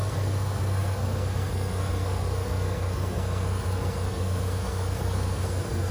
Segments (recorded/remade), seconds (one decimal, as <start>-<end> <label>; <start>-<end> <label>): 0.0-5.9 remade